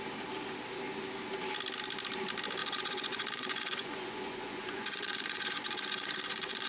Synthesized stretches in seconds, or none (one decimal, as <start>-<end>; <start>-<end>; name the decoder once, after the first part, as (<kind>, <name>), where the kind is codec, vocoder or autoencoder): 2.6-6.7 (vocoder, Vocos)